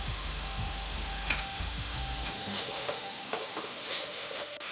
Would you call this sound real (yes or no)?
no